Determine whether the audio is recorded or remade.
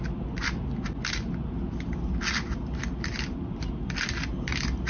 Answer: recorded